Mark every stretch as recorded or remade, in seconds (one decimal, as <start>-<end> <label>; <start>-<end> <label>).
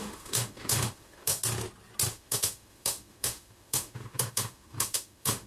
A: 0.0-1.4 remade; 1.4-2.1 recorded; 2.1-5.5 remade